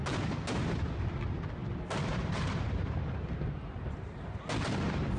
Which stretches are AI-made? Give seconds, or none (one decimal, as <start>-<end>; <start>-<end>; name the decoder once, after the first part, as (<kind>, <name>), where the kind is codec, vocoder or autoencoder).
1.6-4.4 (vocoder, BigVGAN v2)